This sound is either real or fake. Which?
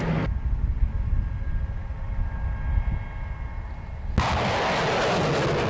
real